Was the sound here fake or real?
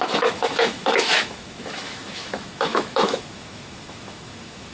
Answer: fake